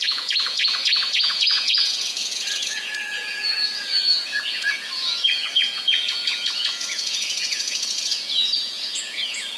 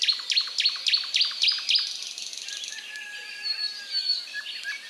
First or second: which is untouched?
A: second